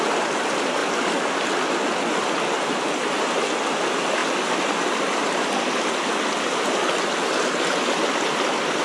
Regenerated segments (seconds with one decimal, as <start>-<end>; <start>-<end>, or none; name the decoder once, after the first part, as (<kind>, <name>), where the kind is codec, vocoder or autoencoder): none